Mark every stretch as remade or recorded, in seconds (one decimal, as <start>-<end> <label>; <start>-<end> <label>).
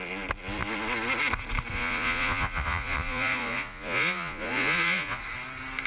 0.0-1.7 recorded; 1.7-5.2 remade; 5.2-5.9 recorded